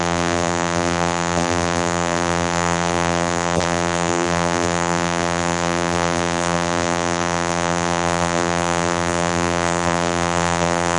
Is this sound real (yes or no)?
no